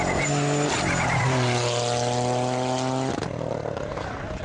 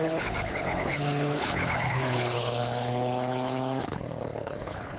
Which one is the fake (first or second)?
second